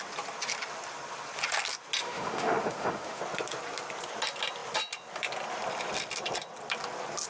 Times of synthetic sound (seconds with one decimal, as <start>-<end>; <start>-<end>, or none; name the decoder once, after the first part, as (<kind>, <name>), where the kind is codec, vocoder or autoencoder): 2.0-3.2 (autoencoder, DAC-VAE)